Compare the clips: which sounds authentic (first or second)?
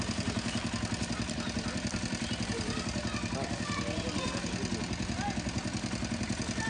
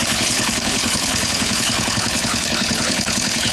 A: first